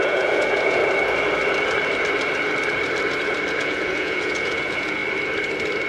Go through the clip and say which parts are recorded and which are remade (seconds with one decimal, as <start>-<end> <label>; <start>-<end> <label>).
0.0-0.8 remade; 0.8-3.6 recorded; 3.6-5.0 remade; 5.0-5.9 recorded

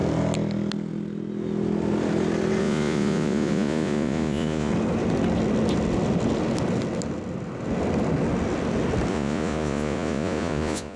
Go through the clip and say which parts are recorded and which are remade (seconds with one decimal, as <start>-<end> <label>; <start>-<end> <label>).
0.0-2.6 recorded; 2.6-4.7 remade; 4.7-9.1 recorded; 9.1-11.0 remade

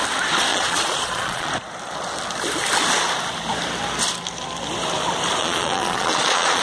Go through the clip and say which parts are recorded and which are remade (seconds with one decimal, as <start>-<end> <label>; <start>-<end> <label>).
0.0-0.5 recorded; 0.5-1.5 remade; 1.5-5.4 recorded; 5.4-6.6 remade

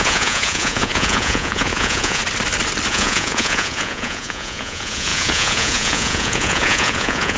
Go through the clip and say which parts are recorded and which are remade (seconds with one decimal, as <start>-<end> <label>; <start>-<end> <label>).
0.0-2.2 remade; 2.2-2.9 recorded; 2.9-7.4 remade

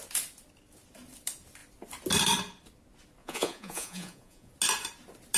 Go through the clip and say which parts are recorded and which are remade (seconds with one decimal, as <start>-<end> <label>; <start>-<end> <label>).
0.0-3.2 recorded; 3.2-4.5 remade; 4.5-5.4 recorded

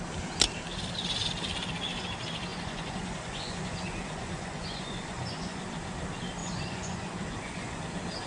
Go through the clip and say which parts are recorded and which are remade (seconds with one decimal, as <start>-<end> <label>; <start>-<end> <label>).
0.0-2.5 recorded; 2.5-5.6 remade; 5.6-6.4 recorded; 6.4-7.8 remade; 7.8-8.3 recorded